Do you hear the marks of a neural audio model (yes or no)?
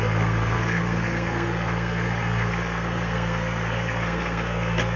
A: yes